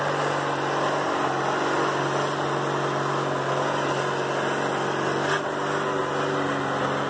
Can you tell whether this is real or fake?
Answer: real